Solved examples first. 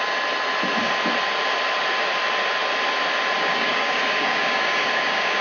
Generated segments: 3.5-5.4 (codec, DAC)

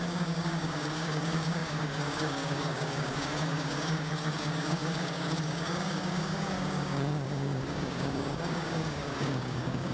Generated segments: 0.0-9.9 (codec, DAC)

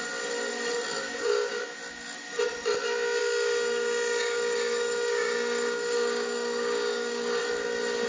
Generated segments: 1.0-1.6 (codec, DAC); 3.2-7.4

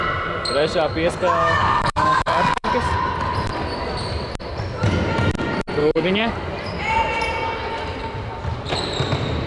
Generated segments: 1.4-2.7 (codec, DAC); 5.8-6.3

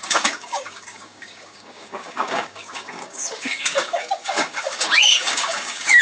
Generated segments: 0.0-6.0 (codec, DAC)

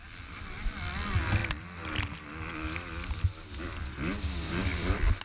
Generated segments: none